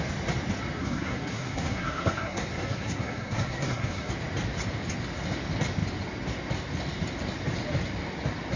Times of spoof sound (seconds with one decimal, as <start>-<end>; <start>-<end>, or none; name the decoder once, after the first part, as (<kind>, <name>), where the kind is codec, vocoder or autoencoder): 0.8-4.1 (codec, SNAC)